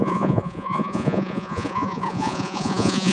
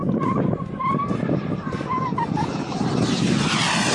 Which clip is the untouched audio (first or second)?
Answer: second